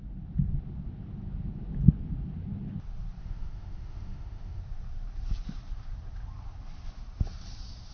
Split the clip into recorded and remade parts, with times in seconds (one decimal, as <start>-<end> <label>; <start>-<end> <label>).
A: 0.0-3.2 recorded; 3.2-4.6 remade; 4.6-7.9 recorded

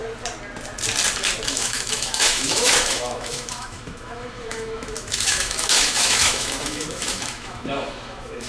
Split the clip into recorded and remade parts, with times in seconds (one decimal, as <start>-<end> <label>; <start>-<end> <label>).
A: 0.0-1.5 recorded; 1.5-8.5 remade

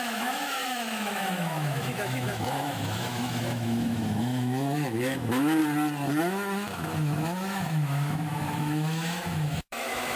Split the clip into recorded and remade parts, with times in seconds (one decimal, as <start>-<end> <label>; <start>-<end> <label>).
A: 0.0-5.6 remade; 5.6-6.2 recorded; 6.2-10.2 remade

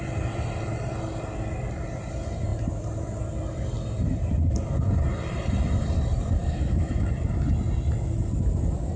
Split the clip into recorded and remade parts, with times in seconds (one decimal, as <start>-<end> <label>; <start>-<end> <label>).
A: 0.0-6.4 recorded; 6.4-7.1 remade; 7.1-9.0 recorded

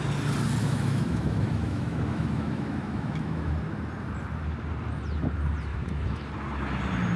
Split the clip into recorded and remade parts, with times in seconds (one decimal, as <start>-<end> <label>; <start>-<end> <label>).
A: 0.0-0.6 recorded; 0.6-3.5 remade; 3.5-5.7 recorded; 5.7-6.3 remade; 6.3-7.2 recorded

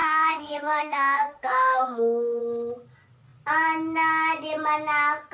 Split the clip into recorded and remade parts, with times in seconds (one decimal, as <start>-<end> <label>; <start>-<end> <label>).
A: 0.0-2.4 remade; 2.4-5.3 recorded